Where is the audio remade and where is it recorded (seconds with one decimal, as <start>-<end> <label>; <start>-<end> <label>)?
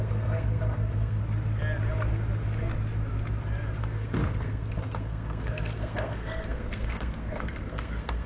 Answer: 0.0-1.2 remade; 1.2-3.8 recorded; 3.8-8.3 remade